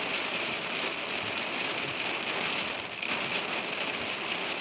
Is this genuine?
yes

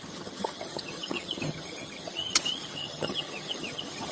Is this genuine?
no